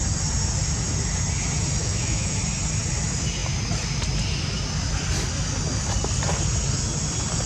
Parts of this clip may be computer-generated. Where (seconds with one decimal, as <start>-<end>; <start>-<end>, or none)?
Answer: 1.8-2.4